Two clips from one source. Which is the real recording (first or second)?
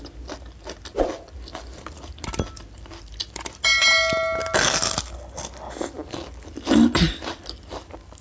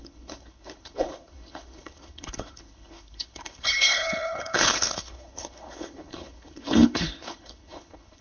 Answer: first